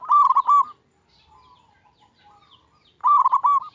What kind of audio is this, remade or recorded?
recorded